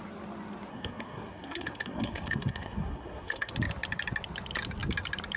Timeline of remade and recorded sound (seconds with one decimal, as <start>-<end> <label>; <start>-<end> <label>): 0.0-0.7 recorded; 0.7-3.5 remade; 3.5-5.4 recorded